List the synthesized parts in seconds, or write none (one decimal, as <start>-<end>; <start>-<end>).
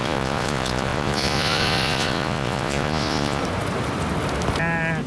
0.0-3.4